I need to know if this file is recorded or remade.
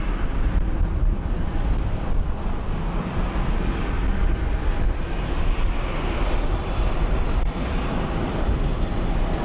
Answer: recorded